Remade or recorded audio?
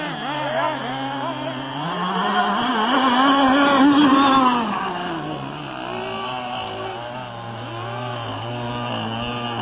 recorded